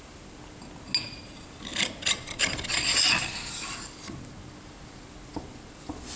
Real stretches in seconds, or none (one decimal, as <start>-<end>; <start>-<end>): 0.0-6.2